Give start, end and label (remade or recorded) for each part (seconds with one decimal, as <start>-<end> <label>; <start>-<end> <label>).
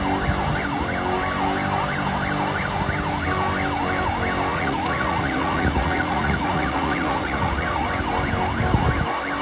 0.0-4.5 recorded; 4.5-7.9 remade; 7.9-9.4 recorded